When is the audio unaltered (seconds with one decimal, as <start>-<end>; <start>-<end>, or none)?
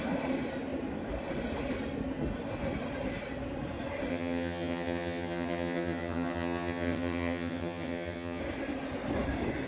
0.0-4.1; 8.4-9.7